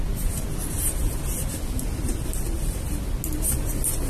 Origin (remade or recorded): recorded